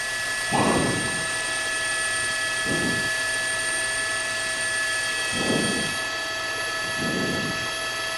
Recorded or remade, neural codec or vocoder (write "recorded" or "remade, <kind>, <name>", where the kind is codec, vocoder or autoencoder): recorded